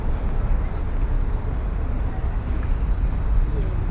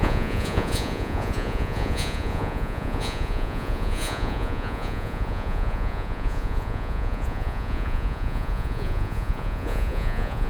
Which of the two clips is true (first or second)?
first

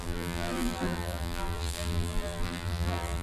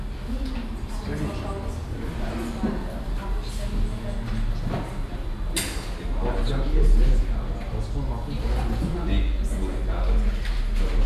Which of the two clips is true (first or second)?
second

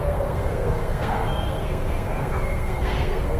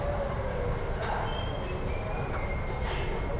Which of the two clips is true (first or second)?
second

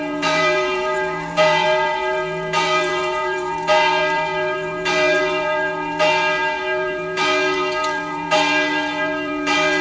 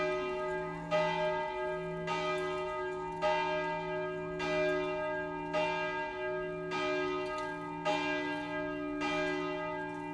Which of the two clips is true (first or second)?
second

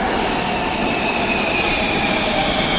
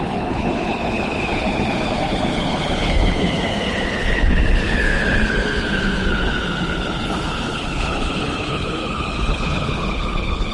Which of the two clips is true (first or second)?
first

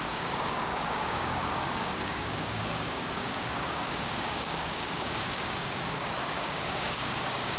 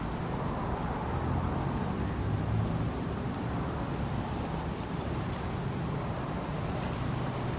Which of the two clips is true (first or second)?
second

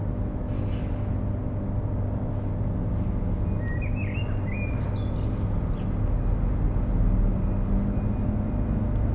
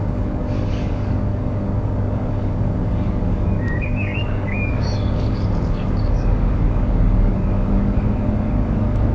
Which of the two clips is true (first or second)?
first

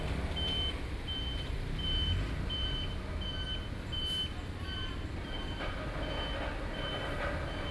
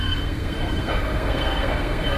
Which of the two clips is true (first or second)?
first